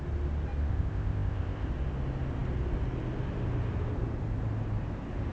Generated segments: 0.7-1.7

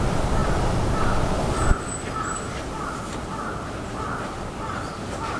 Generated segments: none

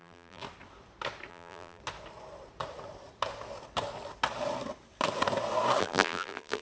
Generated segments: 0.0-0.4; 1.3-1.8; 5.8-6.6

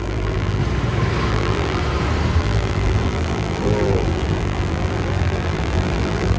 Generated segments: 0.0-0.6; 1.3-1.8; 2.4-6.4

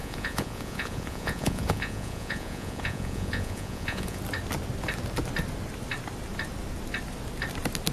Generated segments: 0.0-4.2

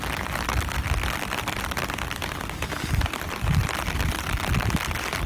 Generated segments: none

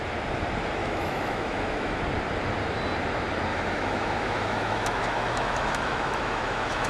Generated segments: 0.8-2.0; 3.5-6.9

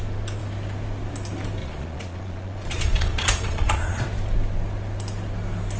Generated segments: 1.6-4.0